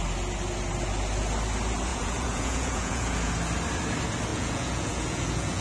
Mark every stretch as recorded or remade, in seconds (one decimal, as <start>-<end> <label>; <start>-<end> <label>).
0.0-1.9 recorded; 1.9-3.3 remade; 3.3-4.3 recorded; 4.3-5.6 remade